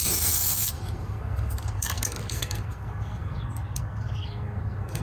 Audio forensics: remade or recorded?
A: remade